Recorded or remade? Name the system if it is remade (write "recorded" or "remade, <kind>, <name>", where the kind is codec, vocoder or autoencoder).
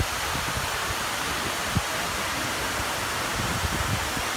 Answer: recorded